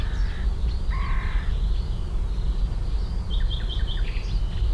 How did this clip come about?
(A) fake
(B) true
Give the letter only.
A